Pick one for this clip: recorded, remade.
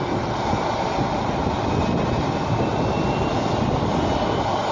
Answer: recorded